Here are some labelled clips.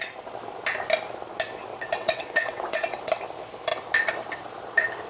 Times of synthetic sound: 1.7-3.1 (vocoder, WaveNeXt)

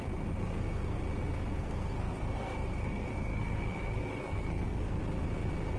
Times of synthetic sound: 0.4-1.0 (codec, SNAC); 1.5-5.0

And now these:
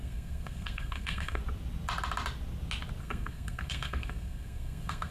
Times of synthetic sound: 0.0-1.4 (codec, SNAC); 3.0-5.1

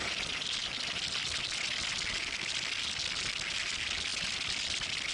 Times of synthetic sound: 4.1-5.1 (vocoder, BigVGAN v2)

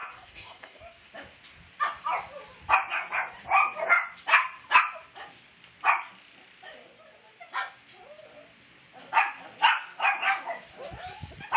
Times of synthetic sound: 0.0-0.8 (codec, DAC)